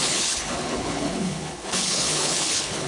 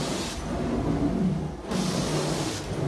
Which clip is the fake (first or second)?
first